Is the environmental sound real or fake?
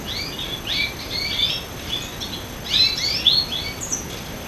real